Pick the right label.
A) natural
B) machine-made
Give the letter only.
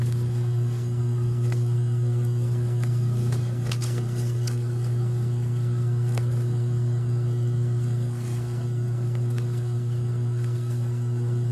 B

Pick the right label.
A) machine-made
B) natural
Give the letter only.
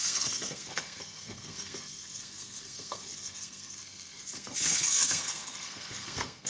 A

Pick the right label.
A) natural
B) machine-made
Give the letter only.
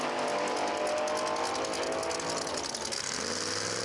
A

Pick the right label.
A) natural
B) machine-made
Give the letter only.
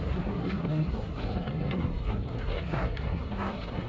B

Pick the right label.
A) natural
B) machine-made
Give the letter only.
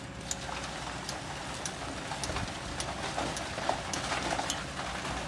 A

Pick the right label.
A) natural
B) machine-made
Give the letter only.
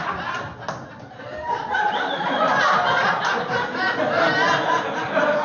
A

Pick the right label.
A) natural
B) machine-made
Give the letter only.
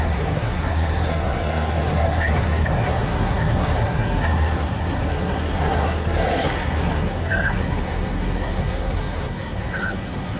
B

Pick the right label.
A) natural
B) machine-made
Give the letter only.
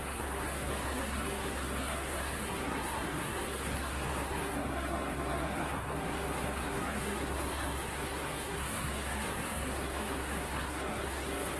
B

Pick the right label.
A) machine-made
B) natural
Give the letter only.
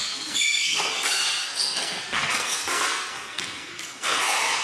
A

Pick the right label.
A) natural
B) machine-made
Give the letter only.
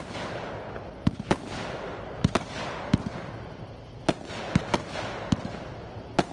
A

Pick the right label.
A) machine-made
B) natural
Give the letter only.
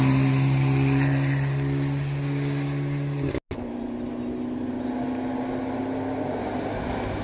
B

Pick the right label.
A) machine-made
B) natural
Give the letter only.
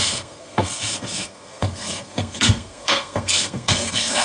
A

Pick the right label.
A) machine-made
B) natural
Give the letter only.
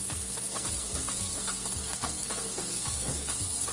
A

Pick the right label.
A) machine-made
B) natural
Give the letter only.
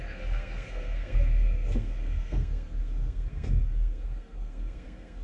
A